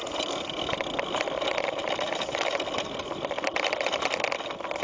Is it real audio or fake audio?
real